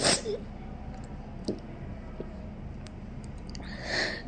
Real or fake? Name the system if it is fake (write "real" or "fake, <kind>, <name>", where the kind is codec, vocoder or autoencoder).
real